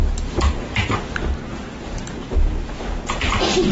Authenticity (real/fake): real